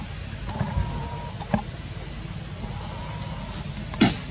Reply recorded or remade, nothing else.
recorded